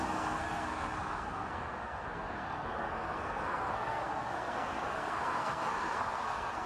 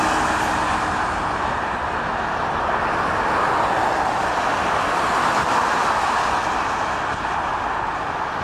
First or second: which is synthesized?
first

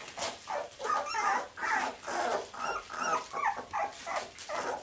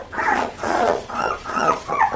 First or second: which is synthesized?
second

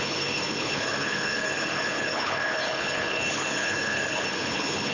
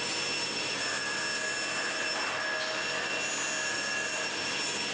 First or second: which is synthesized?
first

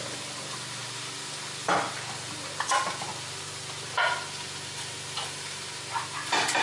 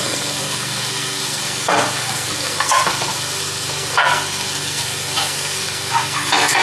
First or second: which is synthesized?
second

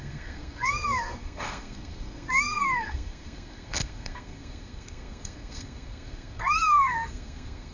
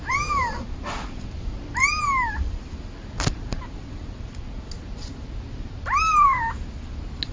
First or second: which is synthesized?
first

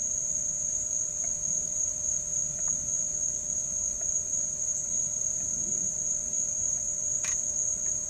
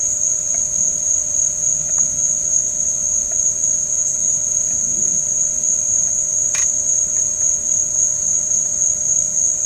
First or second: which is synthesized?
first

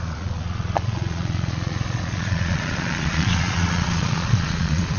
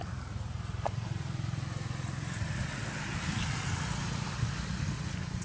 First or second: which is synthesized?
first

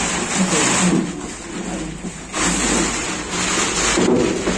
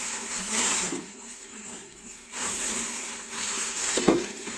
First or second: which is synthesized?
second